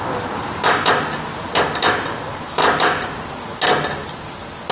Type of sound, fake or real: real